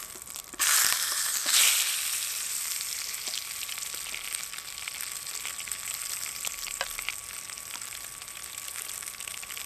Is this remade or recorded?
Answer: recorded